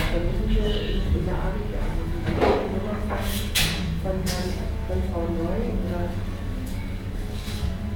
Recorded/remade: remade